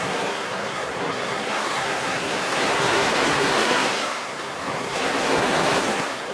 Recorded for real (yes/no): no